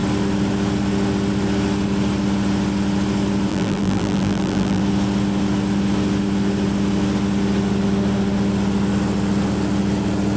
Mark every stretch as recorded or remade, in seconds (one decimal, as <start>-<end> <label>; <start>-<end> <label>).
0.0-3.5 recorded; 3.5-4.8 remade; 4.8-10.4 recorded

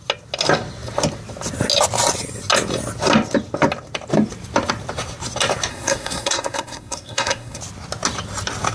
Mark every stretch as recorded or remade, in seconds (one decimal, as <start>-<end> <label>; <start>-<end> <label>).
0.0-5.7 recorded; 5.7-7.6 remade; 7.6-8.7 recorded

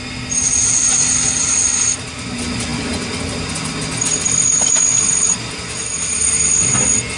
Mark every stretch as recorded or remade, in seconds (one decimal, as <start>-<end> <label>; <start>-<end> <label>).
0.0-7.2 recorded